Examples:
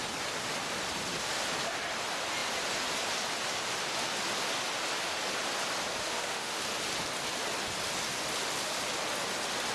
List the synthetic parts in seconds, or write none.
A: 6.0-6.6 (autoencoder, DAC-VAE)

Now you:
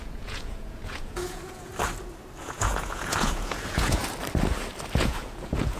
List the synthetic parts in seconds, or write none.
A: 0.0-1.7 (vocoder, Vocos); 2.4-4.0; 5.0-5.8

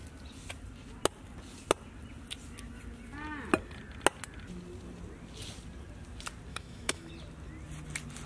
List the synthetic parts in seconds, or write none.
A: 6.5-7.1 (autoencoder, DAC-VAE)

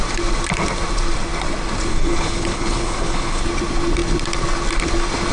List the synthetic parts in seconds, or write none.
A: 1.9-3.4 (codec, HILCodec)

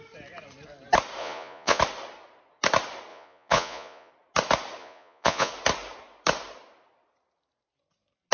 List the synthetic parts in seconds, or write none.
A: 1.2-1.8 (vocoder, Vocos); 3.1-4.1; 4.8-5.5

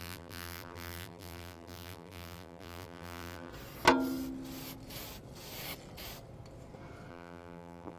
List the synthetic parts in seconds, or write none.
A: 0.0-3.5 (vocoder, BigVGAN v2); 7.1-8.0

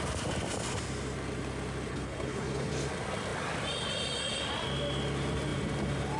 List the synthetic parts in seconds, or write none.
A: 1.9-2.7 (codec, HILCodec)